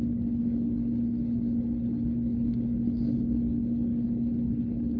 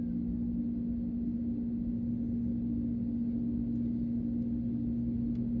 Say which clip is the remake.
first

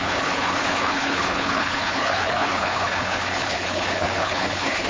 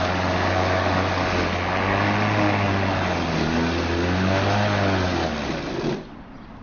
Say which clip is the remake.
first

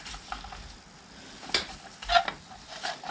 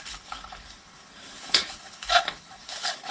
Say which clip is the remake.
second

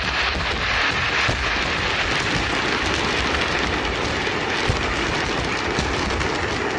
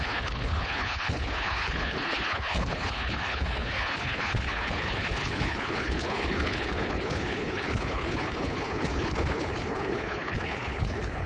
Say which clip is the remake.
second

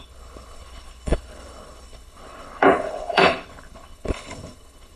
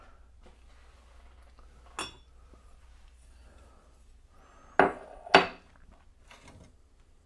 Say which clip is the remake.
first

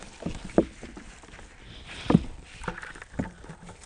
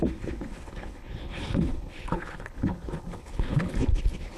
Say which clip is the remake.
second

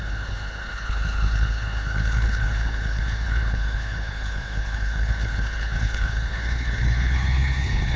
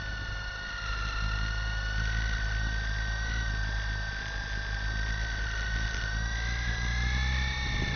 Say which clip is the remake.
first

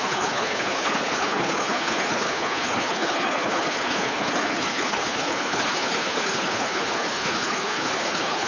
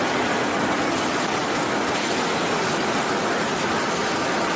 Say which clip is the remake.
first